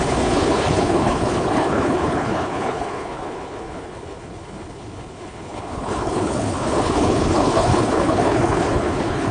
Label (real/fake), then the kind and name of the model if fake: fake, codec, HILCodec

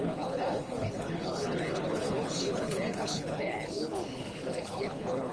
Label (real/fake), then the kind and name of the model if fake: fake, codec, HILCodec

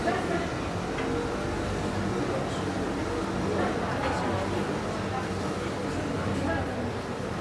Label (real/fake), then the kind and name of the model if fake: real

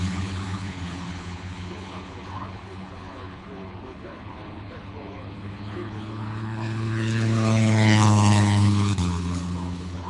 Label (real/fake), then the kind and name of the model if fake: fake, codec, HILCodec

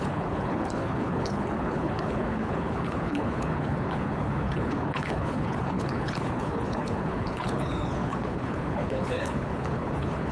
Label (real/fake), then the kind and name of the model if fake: fake, codec, HILCodec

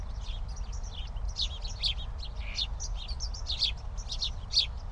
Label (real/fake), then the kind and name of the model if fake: real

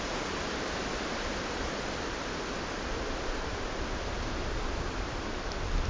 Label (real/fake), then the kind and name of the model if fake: real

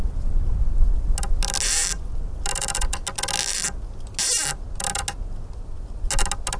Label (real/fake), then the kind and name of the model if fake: real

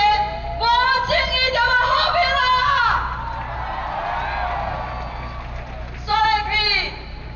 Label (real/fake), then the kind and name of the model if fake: real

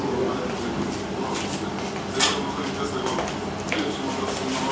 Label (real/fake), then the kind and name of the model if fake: real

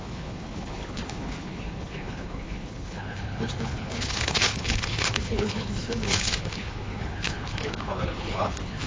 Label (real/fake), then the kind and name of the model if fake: fake, codec, HILCodec